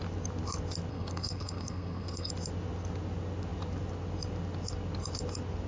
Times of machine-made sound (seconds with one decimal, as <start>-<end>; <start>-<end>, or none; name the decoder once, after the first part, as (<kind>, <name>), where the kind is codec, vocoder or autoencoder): 0.9-2.3 (codec, SNAC)